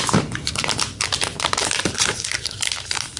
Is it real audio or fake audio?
fake